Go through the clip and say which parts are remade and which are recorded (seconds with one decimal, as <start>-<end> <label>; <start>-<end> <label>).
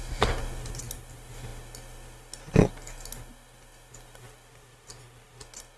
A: 0.0-5.8 recorded